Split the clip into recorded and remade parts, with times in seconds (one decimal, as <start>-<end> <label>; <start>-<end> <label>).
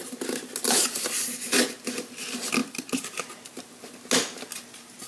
0.0-5.1 recorded